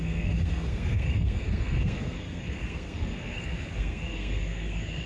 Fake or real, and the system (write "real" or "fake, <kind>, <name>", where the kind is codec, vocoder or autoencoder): fake, codec, SNAC